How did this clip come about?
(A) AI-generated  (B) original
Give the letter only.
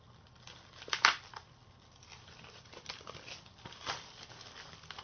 B